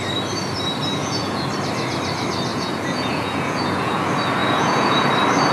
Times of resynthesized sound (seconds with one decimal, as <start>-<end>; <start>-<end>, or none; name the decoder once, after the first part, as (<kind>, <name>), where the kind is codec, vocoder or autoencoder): 1.0-1.5 (vocoder, Vocos); 2.5-4.0; 4.4-5.1